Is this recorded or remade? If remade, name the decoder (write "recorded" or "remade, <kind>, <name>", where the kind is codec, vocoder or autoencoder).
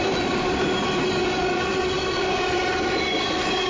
recorded